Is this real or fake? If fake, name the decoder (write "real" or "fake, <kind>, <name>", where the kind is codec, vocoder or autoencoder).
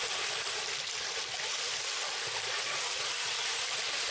real